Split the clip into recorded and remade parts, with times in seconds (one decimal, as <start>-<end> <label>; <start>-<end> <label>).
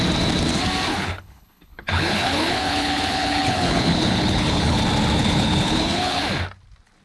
0.0-0.9 recorded; 0.9-4.8 remade; 4.8-5.2 recorded; 5.2-6.2 remade; 6.2-7.0 recorded